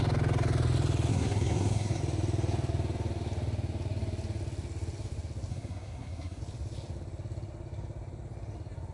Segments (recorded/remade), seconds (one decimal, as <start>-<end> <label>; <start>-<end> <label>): 0.0-1.1 recorded; 1.1-2.0 remade; 2.0-5.5 recorded; 5.5-6.4 remade; 6.4-8.9 recorded